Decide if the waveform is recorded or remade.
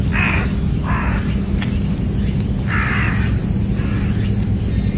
recorded